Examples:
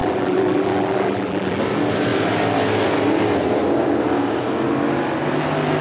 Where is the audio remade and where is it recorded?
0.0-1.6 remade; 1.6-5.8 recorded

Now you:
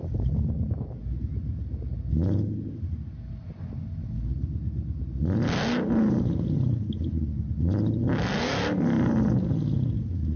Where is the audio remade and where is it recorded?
0.0-10.4 recorded

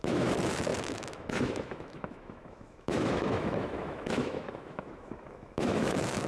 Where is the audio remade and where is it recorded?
0.0-6.3 remade

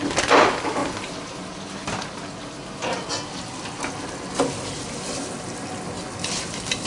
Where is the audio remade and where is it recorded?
0.0-6.9 recorded

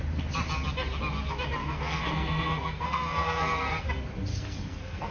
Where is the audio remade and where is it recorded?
0.0-1.6 recorded; 1.6-3.9 remade; 3.9-4.3 recorded; 4.3-5.1 remade